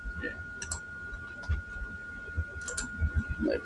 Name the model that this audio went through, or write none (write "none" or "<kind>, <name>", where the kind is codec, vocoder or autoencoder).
none